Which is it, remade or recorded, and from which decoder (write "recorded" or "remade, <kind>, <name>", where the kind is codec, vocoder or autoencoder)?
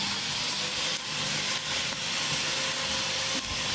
recorded